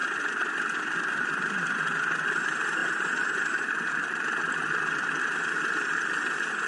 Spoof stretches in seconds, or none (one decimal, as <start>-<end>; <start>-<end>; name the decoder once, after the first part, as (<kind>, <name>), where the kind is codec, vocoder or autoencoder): 2.8-4.4 (vocoder, BigVGAN v2)